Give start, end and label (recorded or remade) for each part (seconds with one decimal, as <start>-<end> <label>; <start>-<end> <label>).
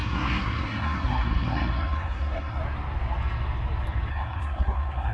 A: 0.0-2.6 remade; 2.6-4.1 recorded; 4.1-5.1 remade